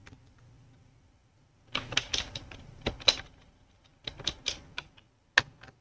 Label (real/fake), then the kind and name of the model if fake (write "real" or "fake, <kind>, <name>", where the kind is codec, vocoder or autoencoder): real